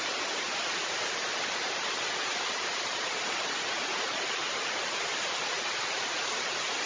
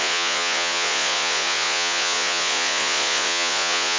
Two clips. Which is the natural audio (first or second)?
first